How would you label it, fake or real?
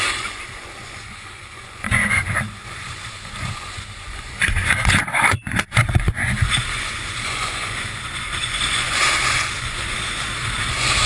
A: fake